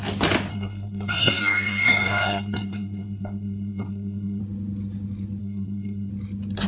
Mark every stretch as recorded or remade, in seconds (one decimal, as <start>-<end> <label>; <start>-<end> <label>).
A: 0.0-0.5 recorded; 0.5-4.4 remade; 4.4-5.4 recorded; 5.4-6.1 remade; 6.1-6.7 recorded